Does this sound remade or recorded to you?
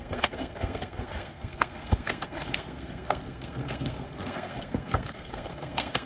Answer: remade